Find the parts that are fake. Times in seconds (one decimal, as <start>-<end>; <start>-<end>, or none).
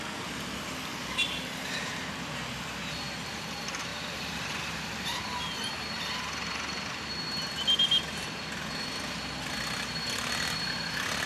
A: 3.9-5.2